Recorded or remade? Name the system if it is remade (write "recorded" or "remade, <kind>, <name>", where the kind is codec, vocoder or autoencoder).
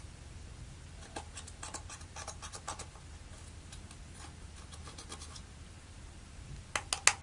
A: recorded